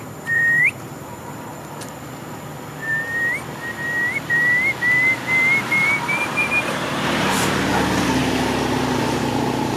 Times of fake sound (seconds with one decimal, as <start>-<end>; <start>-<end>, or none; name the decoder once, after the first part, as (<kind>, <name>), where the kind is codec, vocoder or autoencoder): 0.0-1.5 (vocoder, BigVGAN v2); 5.6-7.7; 9.0-9.8